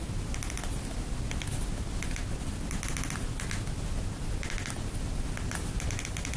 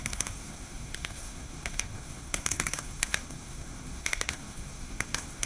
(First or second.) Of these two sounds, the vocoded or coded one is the second